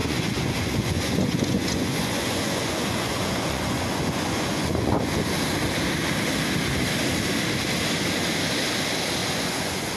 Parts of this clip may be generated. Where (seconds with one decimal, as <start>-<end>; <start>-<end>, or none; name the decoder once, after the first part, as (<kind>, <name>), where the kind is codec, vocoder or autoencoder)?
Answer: 0.0-5.1 (vocoder, Vocos); 9.2-10.0